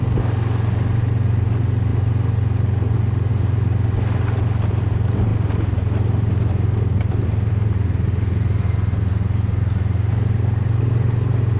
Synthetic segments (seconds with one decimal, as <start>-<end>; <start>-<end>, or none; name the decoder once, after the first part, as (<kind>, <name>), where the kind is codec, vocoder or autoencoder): none